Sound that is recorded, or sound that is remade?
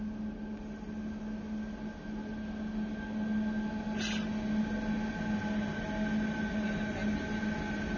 recorded